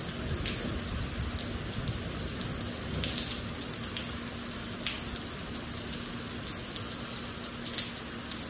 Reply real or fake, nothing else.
real